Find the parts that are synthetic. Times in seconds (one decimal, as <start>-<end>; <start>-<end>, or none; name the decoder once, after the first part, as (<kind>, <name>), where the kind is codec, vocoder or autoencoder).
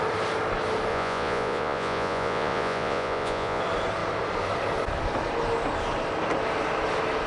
0.9-3.6 (vocoder, Vocos)